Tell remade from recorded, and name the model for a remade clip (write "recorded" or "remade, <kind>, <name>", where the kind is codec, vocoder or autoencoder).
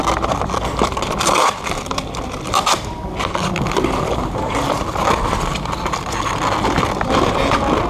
recorded